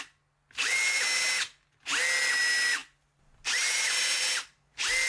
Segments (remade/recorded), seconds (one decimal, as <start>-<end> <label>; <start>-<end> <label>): 0.0-5.1 recorded